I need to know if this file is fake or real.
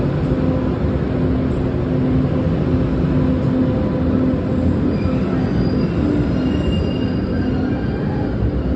real